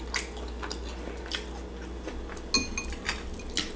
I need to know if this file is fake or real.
real